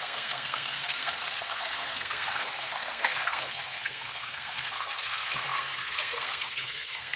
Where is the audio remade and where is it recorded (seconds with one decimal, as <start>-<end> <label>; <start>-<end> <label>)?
0.0-7.2 remade